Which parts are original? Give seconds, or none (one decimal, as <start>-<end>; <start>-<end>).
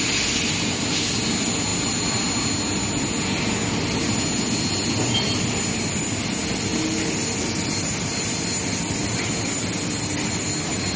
0.0-11.0